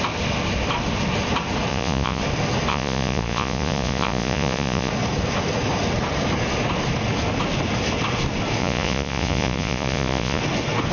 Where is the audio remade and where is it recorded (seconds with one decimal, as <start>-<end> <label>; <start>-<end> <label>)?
0.0-1.7 recorded; 1.7-2.2 remade; 2.2-2.7 recorded; 2.7-4.9 remade; 4.9-8.6 recorded; 8.6-10.4 remade; 10.4-10.9 recorded